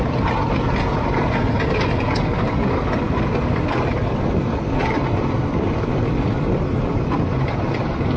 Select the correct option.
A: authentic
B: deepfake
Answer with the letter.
A